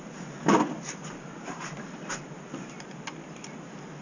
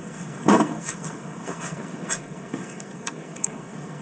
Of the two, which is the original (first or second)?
first